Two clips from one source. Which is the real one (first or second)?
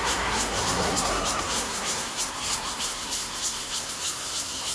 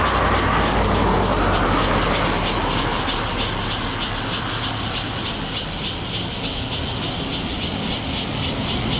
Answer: second